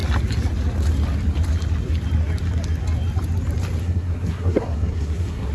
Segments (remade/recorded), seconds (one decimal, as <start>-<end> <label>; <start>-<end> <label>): 0.0-3.8 recorded; 3.8-5.5 remade